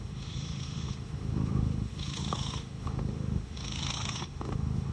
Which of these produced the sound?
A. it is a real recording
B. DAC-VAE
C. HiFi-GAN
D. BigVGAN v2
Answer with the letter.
B